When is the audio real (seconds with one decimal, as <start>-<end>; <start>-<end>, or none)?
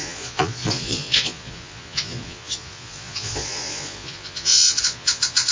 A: none